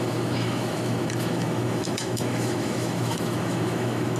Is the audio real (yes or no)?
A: no